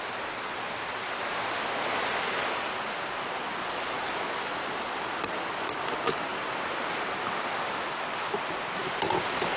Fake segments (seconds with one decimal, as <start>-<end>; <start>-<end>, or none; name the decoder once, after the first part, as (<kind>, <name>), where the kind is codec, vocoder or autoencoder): 3.5-4.1 (vocoder, Vocos)